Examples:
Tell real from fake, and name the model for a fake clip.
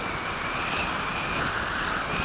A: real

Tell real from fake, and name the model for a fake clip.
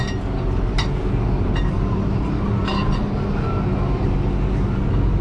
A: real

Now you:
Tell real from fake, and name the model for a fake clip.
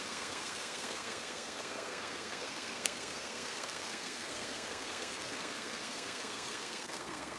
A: fake, codec, SNAC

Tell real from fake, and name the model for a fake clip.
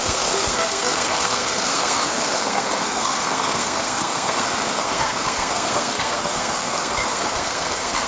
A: fake, codec, SNAC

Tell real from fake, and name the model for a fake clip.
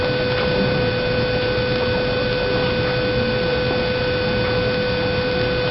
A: real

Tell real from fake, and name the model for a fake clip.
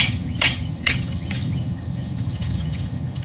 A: fake, vocoder, HiFi-GAN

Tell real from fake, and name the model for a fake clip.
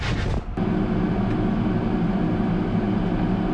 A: real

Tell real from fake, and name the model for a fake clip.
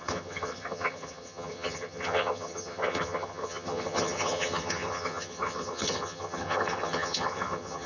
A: fake, vocoder, HiFi-GAN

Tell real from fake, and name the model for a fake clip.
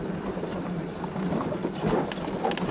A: real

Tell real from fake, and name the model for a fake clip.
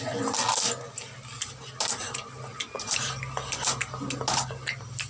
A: real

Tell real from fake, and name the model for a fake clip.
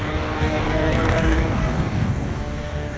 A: fake, codec, DAC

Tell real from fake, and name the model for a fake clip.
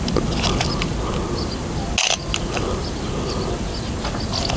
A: real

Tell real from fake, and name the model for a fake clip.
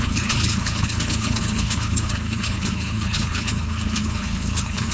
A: fake, codec, HILCodec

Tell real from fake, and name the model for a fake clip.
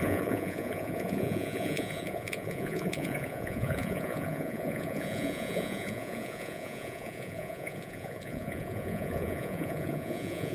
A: fake, vocoder, Vocos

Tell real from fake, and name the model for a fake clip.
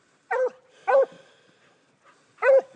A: real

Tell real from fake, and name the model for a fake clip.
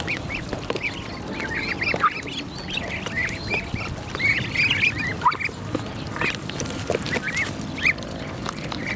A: real